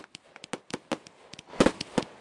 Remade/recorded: recorded